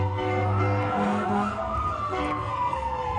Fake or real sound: fake